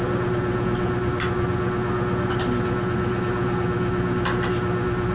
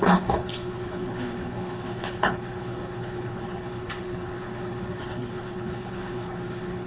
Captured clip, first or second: first